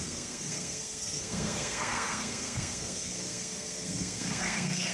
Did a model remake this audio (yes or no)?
yes